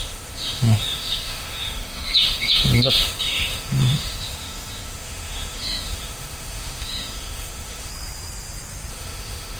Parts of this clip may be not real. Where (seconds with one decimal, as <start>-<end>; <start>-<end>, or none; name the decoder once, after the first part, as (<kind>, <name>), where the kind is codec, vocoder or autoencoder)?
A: 0.0-7.9 (autoencoder, DAC-VAE); 8.9-9.6